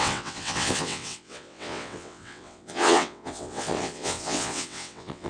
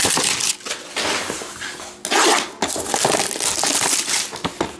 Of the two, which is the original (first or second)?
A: second